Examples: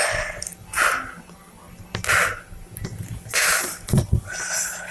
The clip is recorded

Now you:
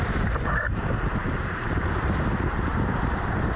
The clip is remade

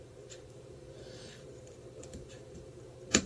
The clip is remade